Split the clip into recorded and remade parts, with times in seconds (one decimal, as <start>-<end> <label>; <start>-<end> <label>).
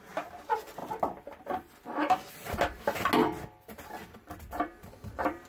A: 0.0-5.5 recorded